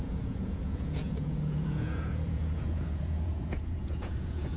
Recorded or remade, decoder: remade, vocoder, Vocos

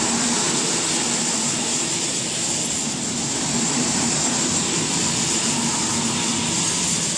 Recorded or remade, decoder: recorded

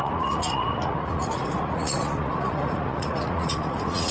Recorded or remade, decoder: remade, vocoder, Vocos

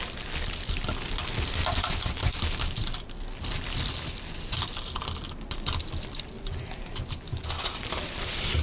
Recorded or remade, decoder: recorded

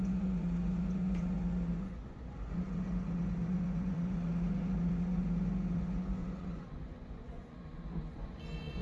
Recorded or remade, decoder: remade, vocoder, Vocos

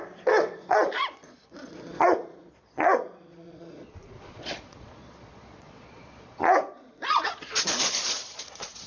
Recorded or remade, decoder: remade, vocoder, Vocos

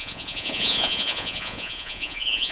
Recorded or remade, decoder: remade, vocoder, Vocos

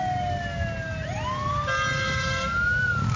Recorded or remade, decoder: recorded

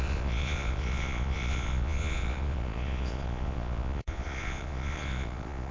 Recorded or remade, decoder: remade, vocoder, Vocos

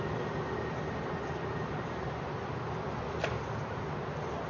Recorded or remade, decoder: recorded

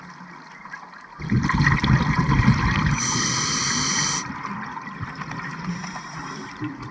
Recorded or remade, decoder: recorded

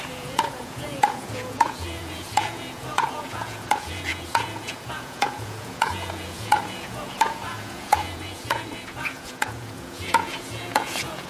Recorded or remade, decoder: remade, vocoder, Vocos